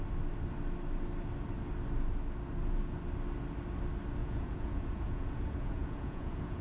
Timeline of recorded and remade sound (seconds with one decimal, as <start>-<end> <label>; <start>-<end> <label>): 0.0-4.2 recorded; 4.2-6.6 remade